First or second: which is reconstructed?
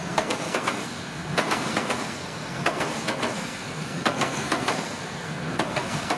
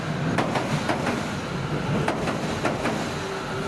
first